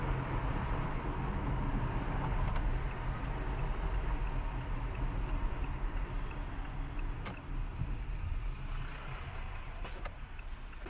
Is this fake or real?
real